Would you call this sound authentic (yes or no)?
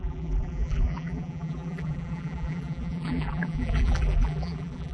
no